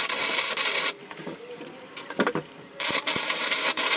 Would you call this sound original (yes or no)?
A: no